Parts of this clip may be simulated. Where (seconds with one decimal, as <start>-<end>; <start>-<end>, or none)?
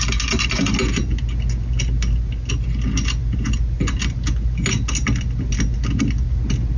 none